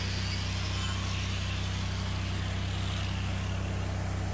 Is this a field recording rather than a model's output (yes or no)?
yes